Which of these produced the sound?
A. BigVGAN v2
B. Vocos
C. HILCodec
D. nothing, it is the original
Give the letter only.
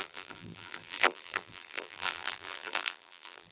A